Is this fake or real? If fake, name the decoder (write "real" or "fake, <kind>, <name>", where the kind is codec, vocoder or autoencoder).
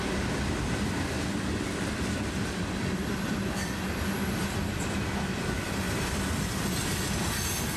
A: fake, vocoder, BigVGAN v2